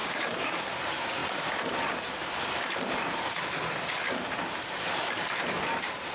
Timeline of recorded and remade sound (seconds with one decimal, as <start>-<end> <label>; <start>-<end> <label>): 0.0-0.6 remade; 0.6-6.1 recorded